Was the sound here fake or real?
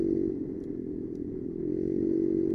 real